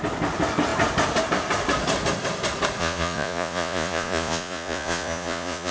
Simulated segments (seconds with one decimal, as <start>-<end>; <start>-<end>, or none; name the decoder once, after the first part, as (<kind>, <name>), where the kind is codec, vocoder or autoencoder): 2.8-5.7 (vocoder, Vocos)